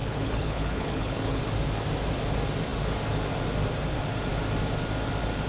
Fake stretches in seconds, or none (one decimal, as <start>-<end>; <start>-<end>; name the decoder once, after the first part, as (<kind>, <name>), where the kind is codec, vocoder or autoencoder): 0.0-1.4 (codec, HILCodec)